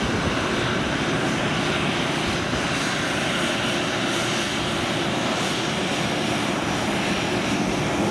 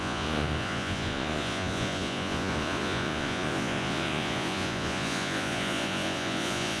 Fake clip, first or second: second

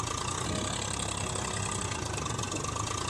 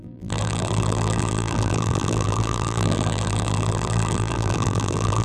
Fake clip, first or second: second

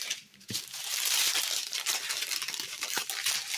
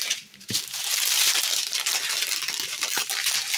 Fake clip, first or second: first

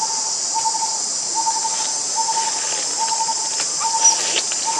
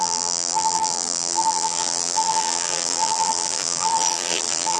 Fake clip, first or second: second